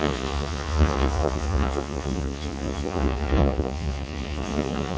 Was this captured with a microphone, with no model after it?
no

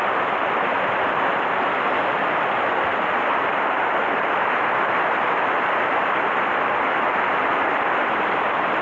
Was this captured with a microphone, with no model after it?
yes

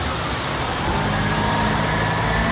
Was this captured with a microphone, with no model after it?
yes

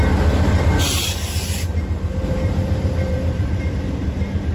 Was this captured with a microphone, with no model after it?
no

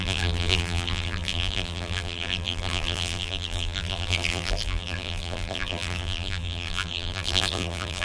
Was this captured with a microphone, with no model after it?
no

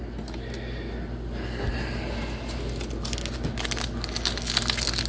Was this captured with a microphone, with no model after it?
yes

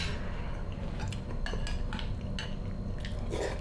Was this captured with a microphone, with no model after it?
yes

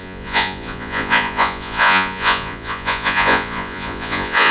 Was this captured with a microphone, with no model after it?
no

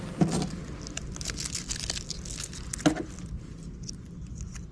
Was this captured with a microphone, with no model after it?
yes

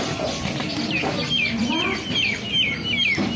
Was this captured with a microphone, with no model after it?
yes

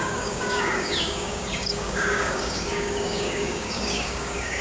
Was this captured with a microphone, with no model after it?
no